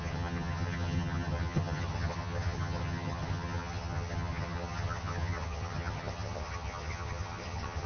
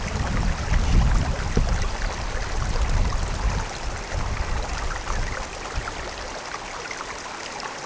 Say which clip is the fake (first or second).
first